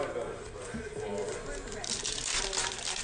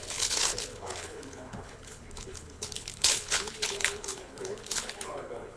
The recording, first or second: first